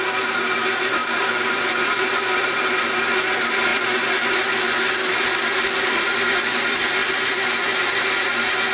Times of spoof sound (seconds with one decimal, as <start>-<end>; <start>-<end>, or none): 1.0-2.1; 7.0-8.7